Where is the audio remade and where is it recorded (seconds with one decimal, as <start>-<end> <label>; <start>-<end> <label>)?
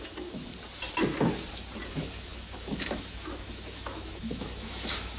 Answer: 0.0-0.5 remade; 0.5-1.9 recorded; 1.9-5.2 remade